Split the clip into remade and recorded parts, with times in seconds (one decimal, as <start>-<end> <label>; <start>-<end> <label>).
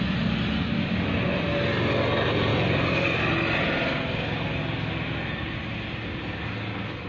0.0-7.1 recorded